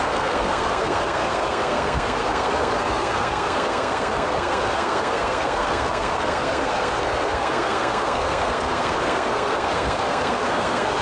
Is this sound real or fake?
fake